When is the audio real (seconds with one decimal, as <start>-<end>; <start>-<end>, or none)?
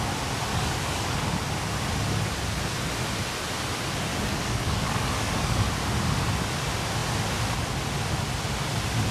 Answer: 0.0-0.5; 1.4-4.1; 5.6-9.1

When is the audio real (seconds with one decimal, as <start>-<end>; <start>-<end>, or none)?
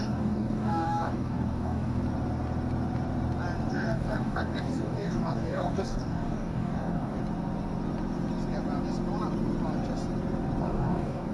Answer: 2.0-3.7; 7.2-10.6